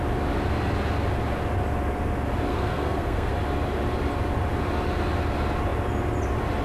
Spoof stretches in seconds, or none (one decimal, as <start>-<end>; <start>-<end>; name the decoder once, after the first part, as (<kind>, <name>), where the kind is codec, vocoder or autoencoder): 2.5-3.3 (codec, SNAC)